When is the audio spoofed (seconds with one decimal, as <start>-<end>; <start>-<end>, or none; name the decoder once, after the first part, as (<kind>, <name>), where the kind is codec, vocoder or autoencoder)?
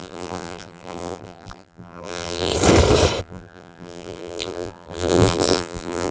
0.0-2.5 (vocoder, BigVGAN v2); 3.2-6.1